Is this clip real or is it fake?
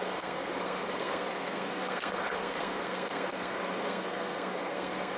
fake